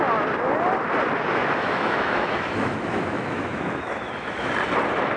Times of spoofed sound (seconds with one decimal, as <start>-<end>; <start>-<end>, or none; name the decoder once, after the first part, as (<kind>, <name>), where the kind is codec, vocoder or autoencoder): 1.4-4.5 (autoencoder, DAC-VAE)